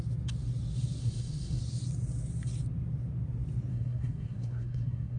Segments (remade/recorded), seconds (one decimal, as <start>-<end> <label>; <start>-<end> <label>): 0.0-1.0 recorded; 1.0-1.6 remade; 1.6-3.7 recorded; 3.7-5.2 remade